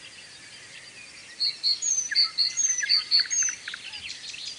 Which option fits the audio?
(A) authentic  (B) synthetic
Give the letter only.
B